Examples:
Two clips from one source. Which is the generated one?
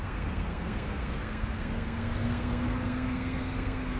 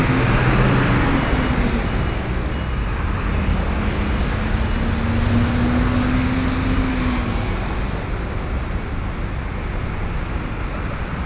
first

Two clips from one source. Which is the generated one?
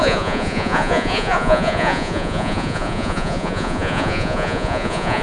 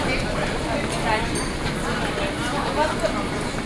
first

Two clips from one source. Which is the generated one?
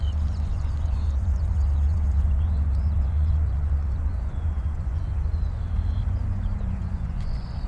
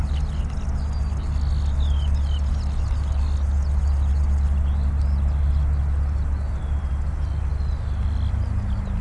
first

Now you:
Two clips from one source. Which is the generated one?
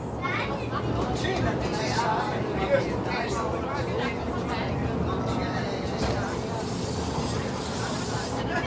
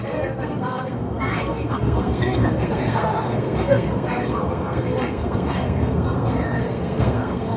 second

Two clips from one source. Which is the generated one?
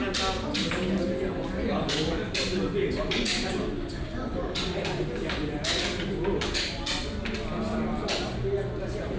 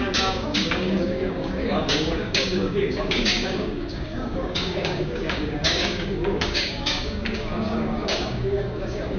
second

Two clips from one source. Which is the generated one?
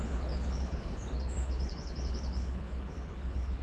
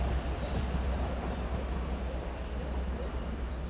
first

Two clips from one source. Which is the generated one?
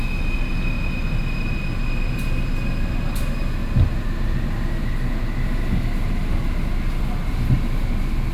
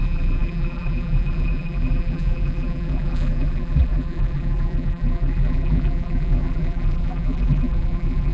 second